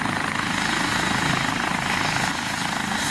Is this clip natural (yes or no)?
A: yes